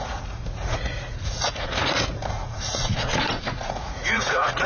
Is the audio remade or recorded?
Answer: remade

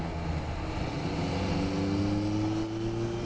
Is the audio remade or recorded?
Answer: recorded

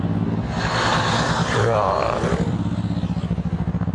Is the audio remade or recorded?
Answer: recorded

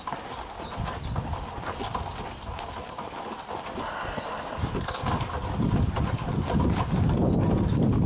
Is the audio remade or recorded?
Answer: recorded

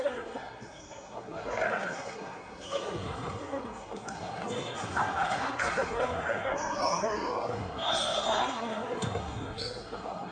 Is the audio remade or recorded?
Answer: remade